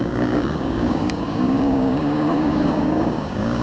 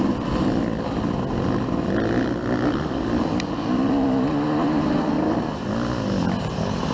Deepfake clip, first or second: first